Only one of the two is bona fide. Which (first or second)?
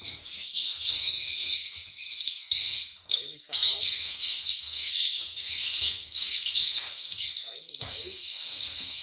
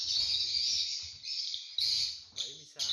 second